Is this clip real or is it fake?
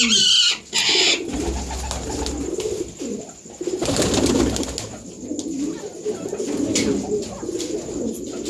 real